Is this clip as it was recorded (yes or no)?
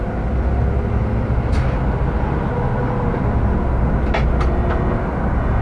yes